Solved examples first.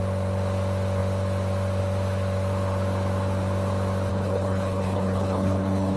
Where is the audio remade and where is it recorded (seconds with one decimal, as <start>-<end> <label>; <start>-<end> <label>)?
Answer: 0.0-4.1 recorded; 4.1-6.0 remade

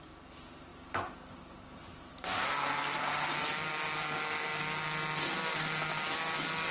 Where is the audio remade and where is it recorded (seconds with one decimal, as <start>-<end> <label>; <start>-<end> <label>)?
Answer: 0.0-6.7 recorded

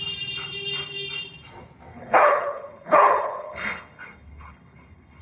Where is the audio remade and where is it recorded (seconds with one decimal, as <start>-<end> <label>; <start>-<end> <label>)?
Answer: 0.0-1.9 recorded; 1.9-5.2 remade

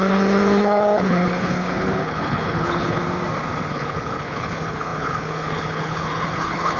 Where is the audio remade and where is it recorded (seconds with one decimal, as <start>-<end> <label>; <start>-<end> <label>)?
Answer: 0.0-3.0 remade; 3.0-3.7 recorded; 3.7-6.8 remade